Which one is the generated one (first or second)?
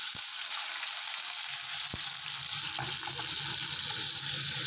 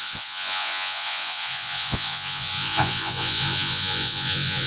second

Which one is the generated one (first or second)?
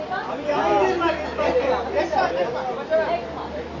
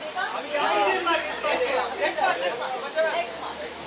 second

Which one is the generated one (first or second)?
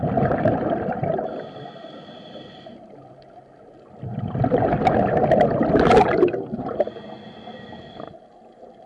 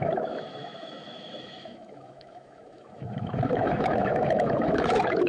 second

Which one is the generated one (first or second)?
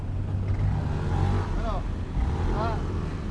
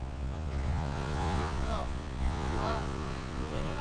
second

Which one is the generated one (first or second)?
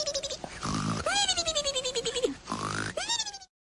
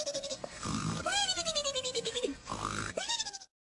second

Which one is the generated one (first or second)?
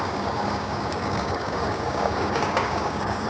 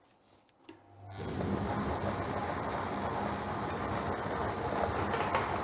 first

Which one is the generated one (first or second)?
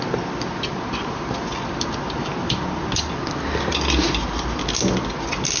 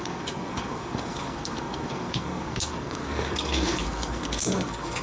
second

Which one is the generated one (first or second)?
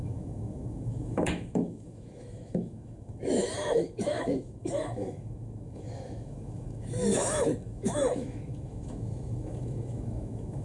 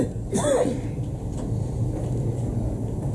first